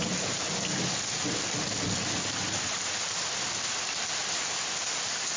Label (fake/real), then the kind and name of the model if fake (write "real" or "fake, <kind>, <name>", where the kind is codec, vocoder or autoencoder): real